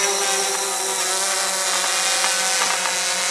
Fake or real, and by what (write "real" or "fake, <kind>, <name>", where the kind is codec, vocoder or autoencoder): real